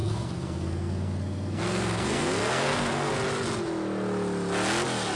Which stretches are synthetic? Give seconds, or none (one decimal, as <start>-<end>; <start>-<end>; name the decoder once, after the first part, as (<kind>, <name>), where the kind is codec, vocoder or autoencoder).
0.0-3.1 (codec, SNAC)